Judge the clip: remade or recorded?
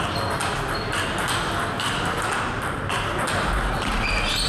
recorded